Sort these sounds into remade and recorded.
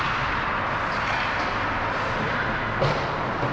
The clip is recorded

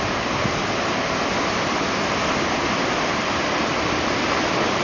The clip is recorded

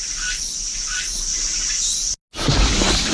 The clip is recorded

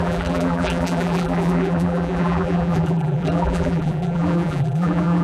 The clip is remade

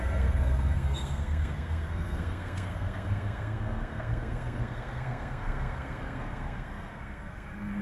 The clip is remade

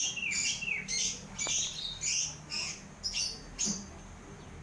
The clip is recorded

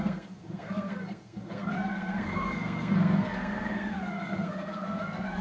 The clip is remade